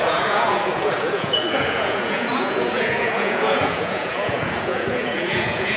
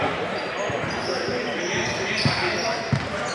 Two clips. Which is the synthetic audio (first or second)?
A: first